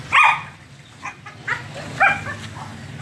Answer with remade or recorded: recorded